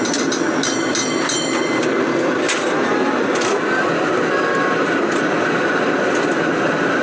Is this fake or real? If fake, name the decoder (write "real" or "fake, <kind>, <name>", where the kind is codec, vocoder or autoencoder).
real